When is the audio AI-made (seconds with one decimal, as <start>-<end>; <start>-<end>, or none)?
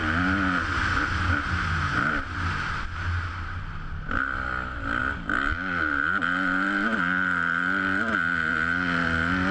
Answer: none